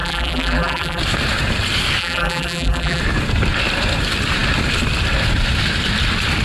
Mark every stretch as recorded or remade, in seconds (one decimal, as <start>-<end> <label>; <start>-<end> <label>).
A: 0.0-1.0 remade; 1.0-2.0 recorded; 2.0-3.0 remade; 3.0-6.4 recorded